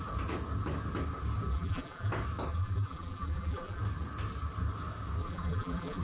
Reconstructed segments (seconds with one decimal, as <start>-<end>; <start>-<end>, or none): 1.5-2.1; 2.5-3.8; 5.2-6.0